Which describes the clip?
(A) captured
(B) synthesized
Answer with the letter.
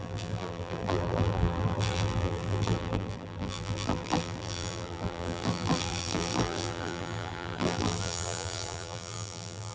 B